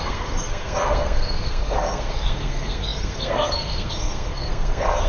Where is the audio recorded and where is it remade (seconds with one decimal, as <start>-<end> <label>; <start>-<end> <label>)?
0.0-5.1 remade